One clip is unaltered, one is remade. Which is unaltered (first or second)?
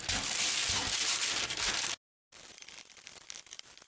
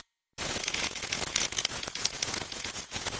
first